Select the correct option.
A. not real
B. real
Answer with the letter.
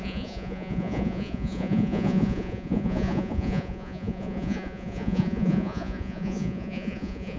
A